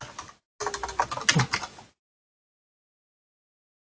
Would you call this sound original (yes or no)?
yes